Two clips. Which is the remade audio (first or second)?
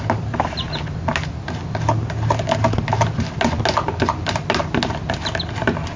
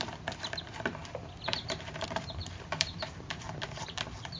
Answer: second